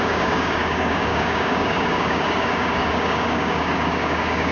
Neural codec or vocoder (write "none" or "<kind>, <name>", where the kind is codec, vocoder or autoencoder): codec, DAC